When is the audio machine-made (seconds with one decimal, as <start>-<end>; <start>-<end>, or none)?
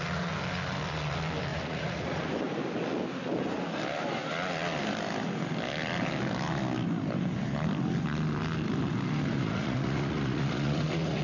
1.5-2.2; 9.3-11.2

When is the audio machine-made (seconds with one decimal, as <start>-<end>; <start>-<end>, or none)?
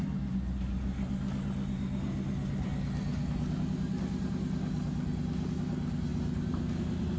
none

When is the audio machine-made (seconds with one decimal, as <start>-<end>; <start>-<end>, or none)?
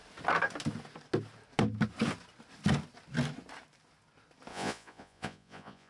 4.5-5.9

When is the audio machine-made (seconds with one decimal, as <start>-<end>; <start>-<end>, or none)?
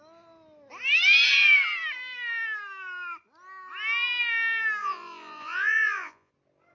4.8-6.3